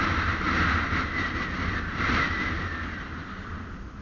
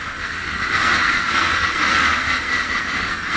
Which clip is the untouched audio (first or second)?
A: first